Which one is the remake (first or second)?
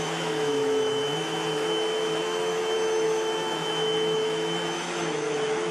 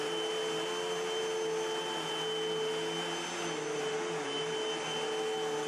first